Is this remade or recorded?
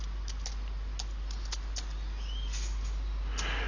recorded